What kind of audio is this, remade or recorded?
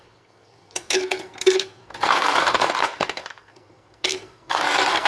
remade